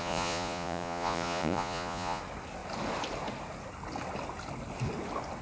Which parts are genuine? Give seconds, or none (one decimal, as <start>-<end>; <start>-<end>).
2.2-5.4